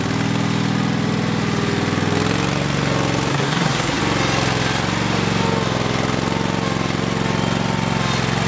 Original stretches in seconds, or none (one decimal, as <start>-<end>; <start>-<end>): 0.0-3.3; 4.0-8.5